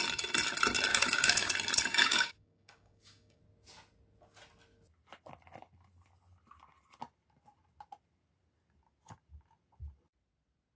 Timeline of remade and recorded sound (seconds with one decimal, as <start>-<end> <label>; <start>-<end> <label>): 0.0-0.9 recorded; 0.9-1.5 remade; 1.5-1.9 recorded; 1.9-3.4 remade; 3.4-10.8 recorded

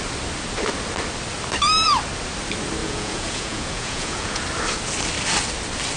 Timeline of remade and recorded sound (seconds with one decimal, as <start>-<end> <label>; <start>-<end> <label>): 0.0-2.8 recorded; 2.8-4.4 remade; 4.4-6.0 recorded

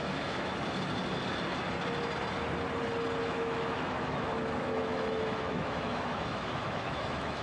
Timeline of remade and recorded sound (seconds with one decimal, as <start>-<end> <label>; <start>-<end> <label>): 0.0-0.5 remade; 0.5-3.2 recorded; 3.2-7.4 remade

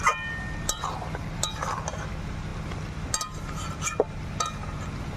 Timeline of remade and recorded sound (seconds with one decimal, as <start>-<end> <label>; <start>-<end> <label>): 0.0-5.2 recorded